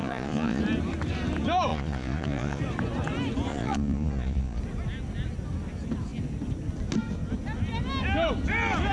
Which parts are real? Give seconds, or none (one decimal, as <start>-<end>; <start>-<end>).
0.6-1.7; 2.6-3.5; 4.6-8.9

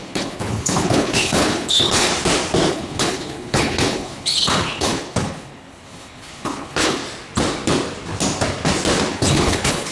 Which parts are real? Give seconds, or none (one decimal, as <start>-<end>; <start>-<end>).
2.1-2.7; 7.0-9.1